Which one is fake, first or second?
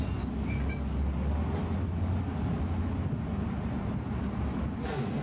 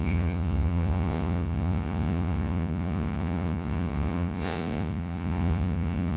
second